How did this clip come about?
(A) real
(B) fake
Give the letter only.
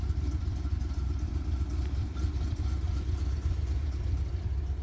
B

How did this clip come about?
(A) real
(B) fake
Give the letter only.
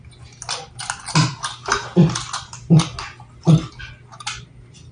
A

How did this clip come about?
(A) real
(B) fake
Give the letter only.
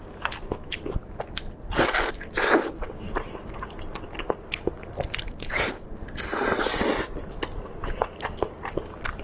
A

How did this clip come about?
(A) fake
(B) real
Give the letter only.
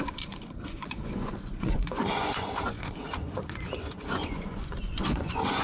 A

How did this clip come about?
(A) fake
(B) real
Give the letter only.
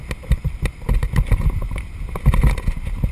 B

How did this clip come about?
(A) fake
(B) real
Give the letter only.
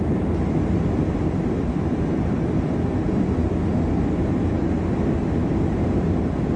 B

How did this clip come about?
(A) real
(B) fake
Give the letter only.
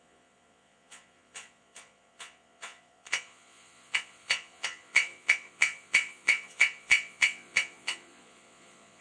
B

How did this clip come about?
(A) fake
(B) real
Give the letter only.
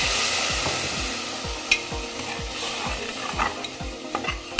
B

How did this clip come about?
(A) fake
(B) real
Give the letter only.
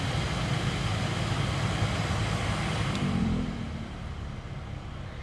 B